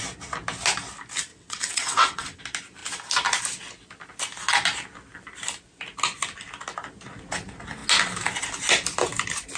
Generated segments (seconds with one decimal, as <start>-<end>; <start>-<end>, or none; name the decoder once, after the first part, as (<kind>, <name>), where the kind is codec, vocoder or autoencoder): 1.3-2.4 (vocoder, WaveNeXt)